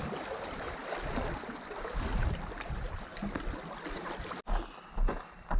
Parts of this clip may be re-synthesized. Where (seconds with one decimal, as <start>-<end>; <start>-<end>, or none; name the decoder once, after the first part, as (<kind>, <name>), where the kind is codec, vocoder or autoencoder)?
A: none